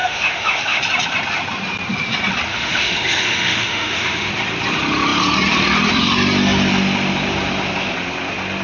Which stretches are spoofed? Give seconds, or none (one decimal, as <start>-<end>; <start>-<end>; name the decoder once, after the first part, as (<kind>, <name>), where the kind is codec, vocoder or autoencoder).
0.0-0.8 (autoencoder, DAC-VAE); 2.5-4.3